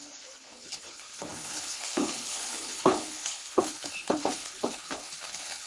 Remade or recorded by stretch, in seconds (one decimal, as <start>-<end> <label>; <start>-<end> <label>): 0.0-5.7 remade